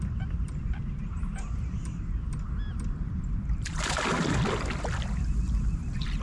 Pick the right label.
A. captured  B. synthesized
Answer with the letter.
A